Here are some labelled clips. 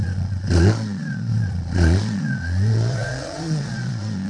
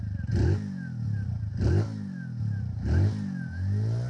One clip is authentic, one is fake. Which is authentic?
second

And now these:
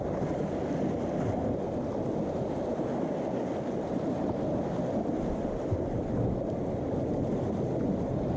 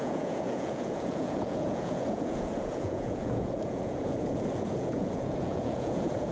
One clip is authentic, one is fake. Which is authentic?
first